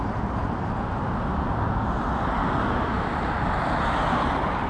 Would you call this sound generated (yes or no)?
no